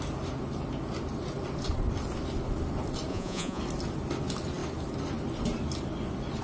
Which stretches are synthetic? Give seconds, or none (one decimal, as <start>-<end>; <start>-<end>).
3.1-3.6